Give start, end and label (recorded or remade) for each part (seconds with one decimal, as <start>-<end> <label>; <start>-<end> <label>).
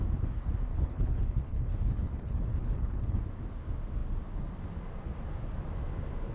0.0-0.7 recorded; 0.7-3.2 remade; 3.2-6.3 recorded